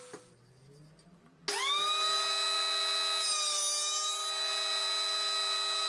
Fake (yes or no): no